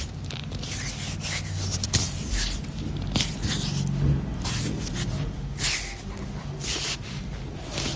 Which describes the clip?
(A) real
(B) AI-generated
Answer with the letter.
A